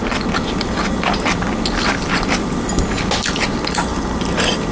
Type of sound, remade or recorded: recorded